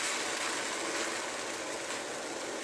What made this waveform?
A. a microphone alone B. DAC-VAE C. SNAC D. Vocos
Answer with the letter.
A